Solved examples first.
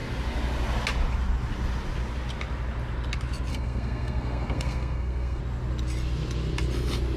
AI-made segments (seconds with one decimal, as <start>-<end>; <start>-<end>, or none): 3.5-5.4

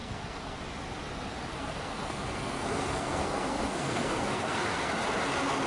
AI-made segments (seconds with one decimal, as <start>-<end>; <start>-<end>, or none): 0.0-0.6; 1.5-4.9

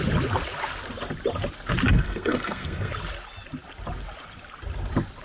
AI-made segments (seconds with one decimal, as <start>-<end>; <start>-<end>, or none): 1.9-2.9

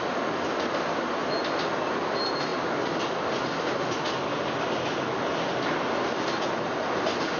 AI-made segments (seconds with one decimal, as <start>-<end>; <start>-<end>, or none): none

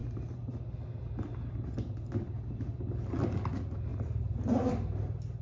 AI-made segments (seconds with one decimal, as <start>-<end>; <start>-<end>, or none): none